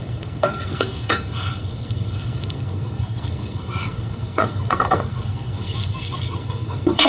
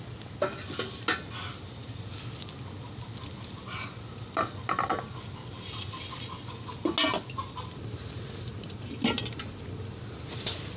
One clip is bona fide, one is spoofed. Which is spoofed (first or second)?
first